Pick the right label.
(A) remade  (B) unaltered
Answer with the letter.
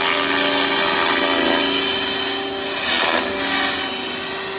B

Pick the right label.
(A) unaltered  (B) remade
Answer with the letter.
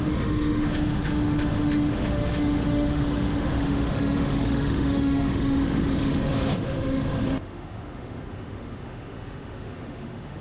B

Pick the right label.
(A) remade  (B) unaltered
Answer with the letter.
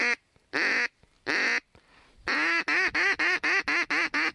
B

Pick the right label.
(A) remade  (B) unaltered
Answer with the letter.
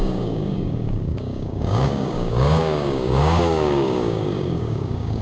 A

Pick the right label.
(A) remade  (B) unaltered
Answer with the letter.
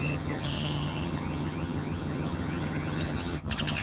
A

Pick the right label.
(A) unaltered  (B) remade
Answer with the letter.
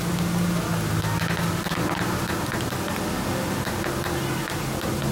A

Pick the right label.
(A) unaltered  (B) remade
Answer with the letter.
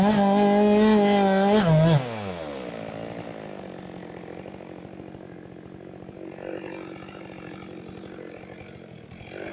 A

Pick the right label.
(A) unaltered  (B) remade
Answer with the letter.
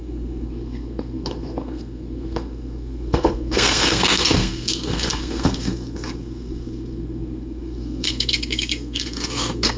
B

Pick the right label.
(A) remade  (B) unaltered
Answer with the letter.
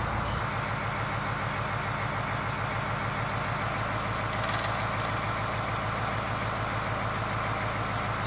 B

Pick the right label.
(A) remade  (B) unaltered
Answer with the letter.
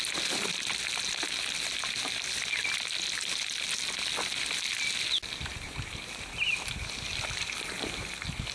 B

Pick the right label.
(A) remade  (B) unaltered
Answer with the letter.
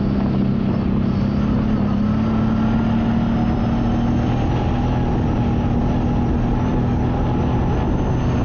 B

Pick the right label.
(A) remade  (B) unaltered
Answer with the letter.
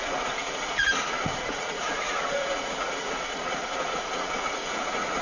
A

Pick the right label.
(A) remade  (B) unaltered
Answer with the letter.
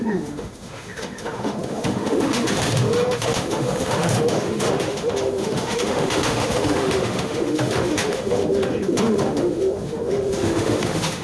A